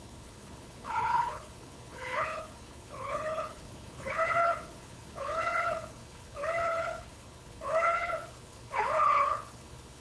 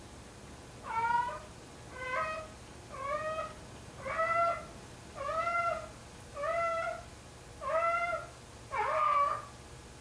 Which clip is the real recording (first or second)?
second